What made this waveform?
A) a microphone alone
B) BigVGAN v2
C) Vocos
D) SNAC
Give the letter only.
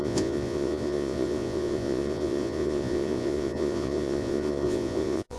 C